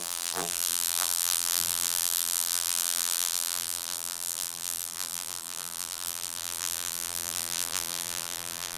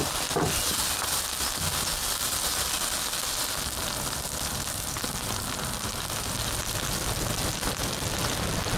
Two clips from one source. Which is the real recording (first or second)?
second